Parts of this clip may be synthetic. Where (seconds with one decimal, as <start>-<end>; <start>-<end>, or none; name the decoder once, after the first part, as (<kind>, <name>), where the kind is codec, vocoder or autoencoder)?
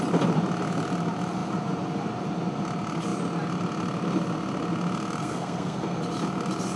5.2-6.0 (codec, SNAC)